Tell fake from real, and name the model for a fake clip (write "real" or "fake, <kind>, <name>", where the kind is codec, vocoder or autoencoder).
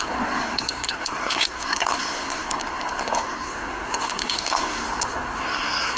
fake, codec, SNAC